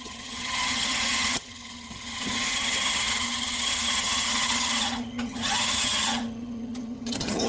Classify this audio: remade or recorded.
remade